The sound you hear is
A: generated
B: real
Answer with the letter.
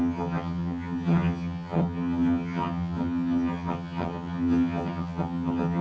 A